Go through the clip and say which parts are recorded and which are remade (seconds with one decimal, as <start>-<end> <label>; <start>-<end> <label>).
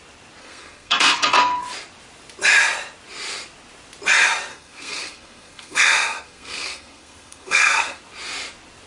0.0-0.4 recorded; 0.4-1.6 remade; 1.6-4.5 recorded; 4.5-8.0 remade; 8.0-8.9 recorded